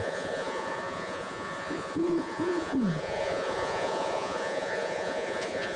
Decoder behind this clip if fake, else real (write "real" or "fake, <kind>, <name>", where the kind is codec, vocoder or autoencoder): fake, vocoder, Vocos